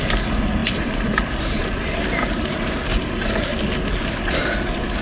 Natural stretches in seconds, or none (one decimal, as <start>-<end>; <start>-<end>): 0.0-2.9; 3.6-5.0